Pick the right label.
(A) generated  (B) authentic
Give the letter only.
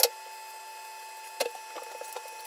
B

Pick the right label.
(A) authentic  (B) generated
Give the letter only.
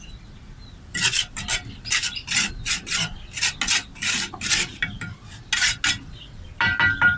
A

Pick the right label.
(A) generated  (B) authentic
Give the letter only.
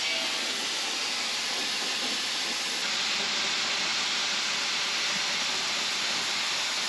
B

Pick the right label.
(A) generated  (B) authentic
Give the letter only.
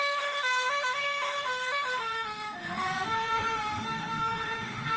A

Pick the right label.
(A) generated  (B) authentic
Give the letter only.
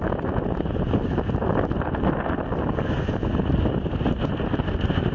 B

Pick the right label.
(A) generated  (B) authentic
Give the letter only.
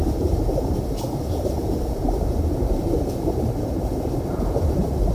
A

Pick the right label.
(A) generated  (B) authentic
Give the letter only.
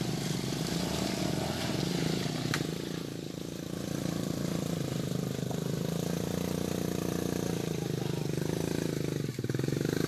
B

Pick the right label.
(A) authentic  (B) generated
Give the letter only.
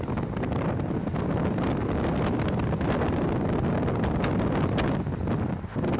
A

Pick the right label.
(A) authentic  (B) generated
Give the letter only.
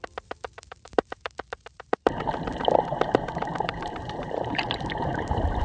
B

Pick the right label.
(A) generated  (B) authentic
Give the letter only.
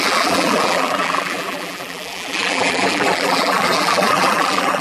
A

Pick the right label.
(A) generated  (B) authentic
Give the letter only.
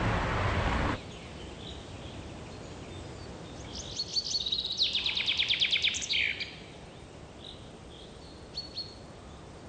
B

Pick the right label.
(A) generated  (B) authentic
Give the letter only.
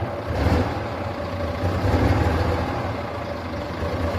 B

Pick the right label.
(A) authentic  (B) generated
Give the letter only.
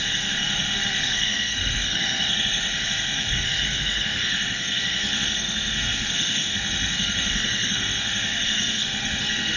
B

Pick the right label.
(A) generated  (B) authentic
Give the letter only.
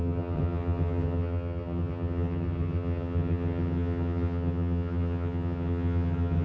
A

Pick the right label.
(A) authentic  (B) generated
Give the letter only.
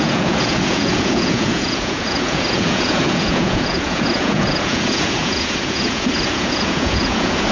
B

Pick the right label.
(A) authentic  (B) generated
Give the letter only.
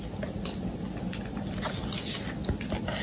A